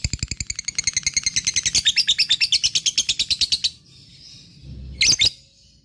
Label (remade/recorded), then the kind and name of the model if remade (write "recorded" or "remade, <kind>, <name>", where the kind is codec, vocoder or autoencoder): recorded